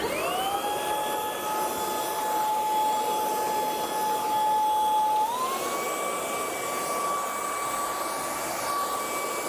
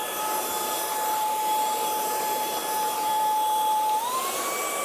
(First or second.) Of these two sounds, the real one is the first